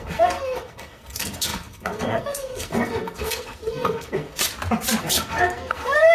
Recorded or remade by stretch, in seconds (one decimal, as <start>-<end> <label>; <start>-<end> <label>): 0.0-4.4 remade; 4.4-5.0 recorded; 5.0-6.1 remade